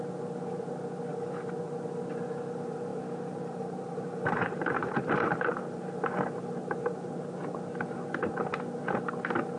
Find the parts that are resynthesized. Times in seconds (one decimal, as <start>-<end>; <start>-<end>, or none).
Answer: 2.9-5.9